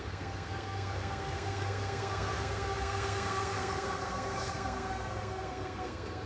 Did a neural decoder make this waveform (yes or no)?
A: yes